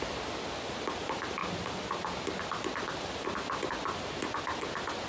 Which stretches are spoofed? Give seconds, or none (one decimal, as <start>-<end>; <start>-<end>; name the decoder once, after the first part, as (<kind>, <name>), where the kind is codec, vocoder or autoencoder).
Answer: none